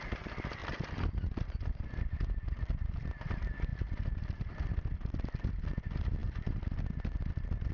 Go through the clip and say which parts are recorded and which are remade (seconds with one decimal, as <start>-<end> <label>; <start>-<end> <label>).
0.0-0.6 recorded; 0.6-3.1 remade; 3.1-7.7 recorded